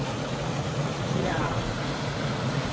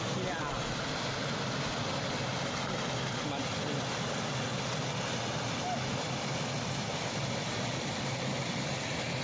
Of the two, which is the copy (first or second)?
first